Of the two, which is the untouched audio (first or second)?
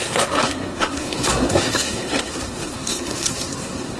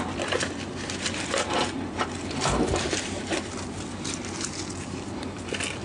second